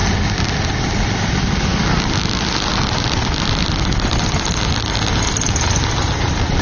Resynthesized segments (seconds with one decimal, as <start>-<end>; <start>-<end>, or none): none